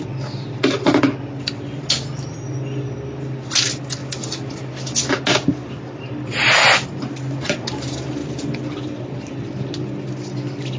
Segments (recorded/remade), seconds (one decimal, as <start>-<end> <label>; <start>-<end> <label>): 0.0-10.8 recorded